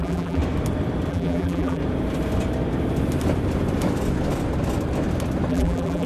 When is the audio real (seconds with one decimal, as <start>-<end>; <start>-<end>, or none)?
0.4-1.1; 1.8-5.5